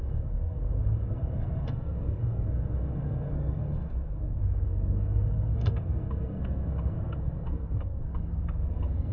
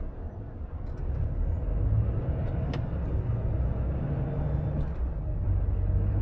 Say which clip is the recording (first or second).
second